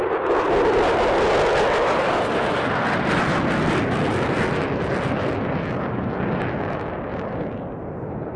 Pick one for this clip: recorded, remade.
recorded